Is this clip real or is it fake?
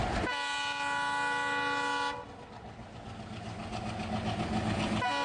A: real